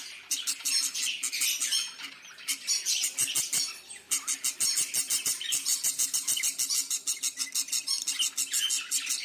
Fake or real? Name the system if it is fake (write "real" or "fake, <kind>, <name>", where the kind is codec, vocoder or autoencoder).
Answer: real